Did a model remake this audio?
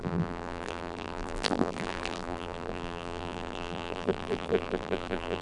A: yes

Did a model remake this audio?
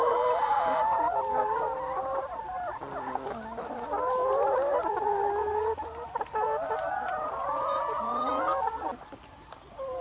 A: yes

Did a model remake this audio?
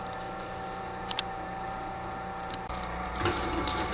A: yes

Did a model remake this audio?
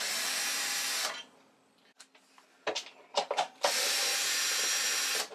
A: no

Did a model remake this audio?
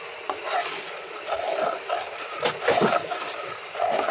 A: no